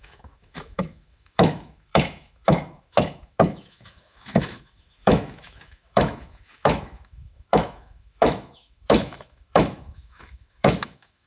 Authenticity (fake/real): fake